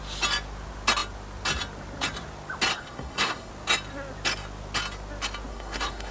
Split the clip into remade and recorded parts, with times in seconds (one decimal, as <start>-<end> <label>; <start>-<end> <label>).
0.0-2.7 recorded; 2.7-3.5 remade; 3.5-5.5 recorded; 5.5-6.1 remade